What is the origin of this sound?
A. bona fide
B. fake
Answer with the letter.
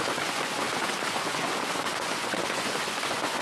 B